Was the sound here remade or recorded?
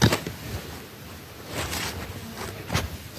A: recorded